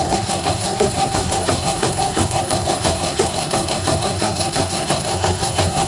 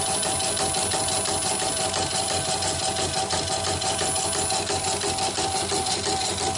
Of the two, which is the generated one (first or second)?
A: first